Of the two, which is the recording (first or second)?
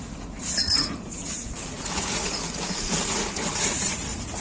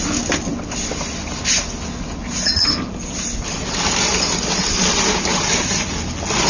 second